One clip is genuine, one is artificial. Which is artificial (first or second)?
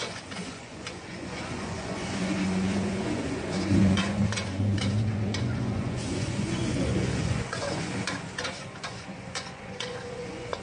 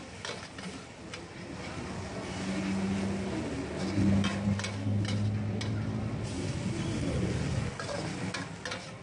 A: first